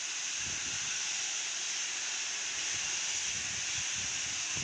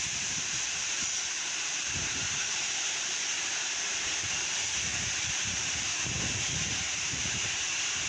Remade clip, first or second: second